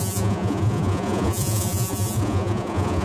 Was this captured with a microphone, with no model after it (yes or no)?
no